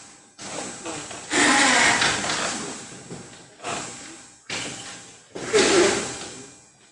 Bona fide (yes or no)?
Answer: yes